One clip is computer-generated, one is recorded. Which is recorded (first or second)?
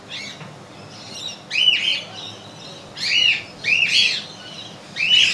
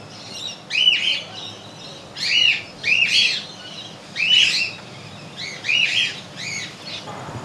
first